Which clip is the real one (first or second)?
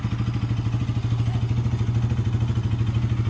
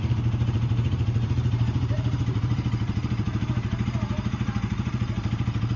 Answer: first